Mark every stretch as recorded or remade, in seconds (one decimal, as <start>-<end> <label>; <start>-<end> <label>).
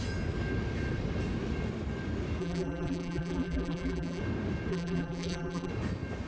0.0-2.4 recorded; 2.4-4.2 remade; 4.2-4.7 recorded; 4.7-5.7 remade; 5.7-6.3 recorded